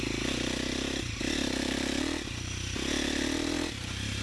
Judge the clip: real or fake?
real